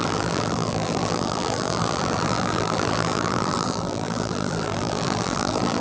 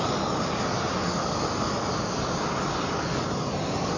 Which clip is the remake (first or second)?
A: first